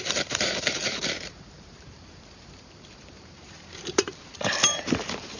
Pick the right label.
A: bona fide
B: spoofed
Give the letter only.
B